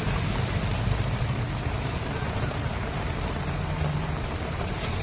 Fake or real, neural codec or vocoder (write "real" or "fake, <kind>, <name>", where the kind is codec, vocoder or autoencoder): fake, vocoder, BigVGAN v2